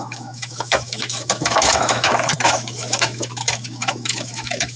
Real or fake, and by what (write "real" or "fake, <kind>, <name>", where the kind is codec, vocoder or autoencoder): fake, autoencoder, DAC-VAE